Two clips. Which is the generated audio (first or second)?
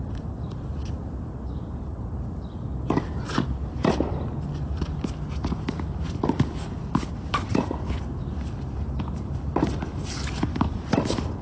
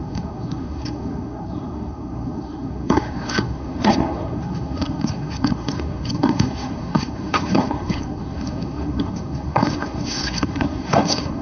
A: second